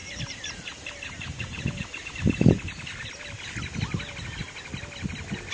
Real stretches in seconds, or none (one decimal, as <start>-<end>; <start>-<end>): 2.5-5.5